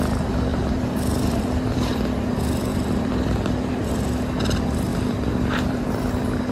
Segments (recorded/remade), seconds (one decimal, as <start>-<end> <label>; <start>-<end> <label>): 0.0-0.5 recorded; 0.5-2.3 remade; 2.3-2.7 recorded; 2.7-3.9 remade; 3.9-4.9 recorded; 4.9-6.1 remade; 6.1-6.5 recorded